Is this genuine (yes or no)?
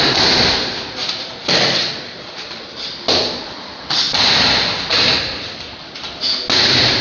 yes